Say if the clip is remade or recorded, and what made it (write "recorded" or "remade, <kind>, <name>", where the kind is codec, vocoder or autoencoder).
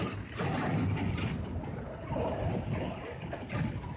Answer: recorded